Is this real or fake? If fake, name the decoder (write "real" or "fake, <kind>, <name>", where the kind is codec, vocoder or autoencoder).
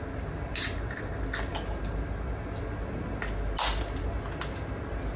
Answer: real